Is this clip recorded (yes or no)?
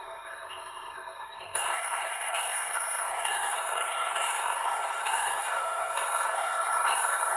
no